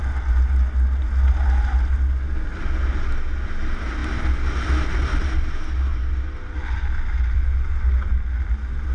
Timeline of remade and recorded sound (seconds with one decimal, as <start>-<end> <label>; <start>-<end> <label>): 0.0-8.9 recorded